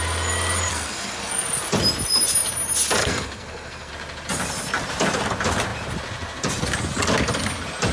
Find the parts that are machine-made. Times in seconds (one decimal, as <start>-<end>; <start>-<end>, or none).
0.7-1.3; 3.0-3.9